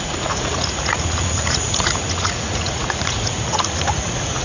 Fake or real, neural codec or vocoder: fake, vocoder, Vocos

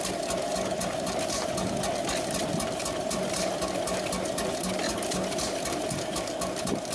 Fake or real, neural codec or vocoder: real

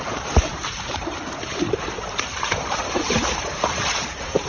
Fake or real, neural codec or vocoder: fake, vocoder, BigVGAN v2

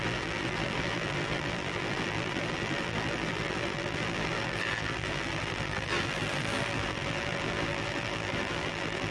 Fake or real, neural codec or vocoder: fake, vocoder, BigVGAN v2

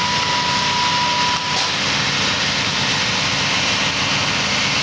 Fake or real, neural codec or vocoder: real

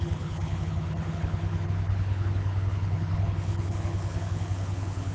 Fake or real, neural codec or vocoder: fake, codec, HILCodec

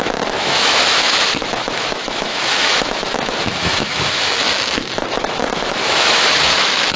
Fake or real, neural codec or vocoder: fake, autoencoder, DAC-VAE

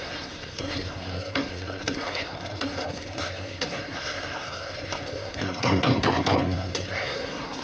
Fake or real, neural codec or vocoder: fake, codec, SNAC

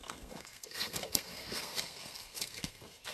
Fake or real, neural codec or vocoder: fake, codec, SNAC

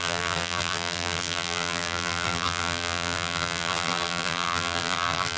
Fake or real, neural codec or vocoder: fake, vocoder, BigVGAN v2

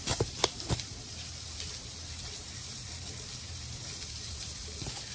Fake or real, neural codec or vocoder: fake, vocoder, BigVGAN v2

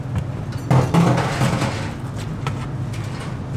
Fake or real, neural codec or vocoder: real